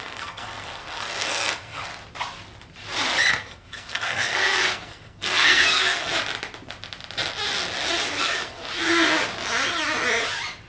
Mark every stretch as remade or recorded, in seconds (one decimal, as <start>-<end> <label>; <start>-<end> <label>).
0.0-1.9 remade; 1.9-3.3 recorded; 3.3-6.1 remade; 6.1-8.2 recorded; 8.2-8.6 remade; 8.6-10.7 recorded